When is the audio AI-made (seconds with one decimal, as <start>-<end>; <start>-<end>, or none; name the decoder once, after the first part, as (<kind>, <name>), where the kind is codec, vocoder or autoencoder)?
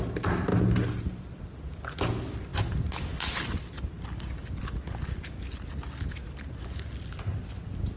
none